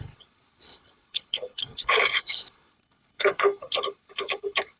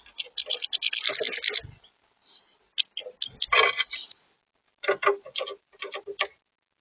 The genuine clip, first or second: second